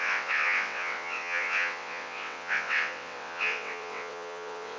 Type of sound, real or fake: fake